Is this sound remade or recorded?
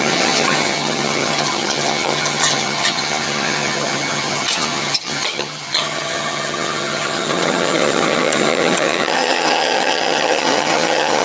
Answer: remade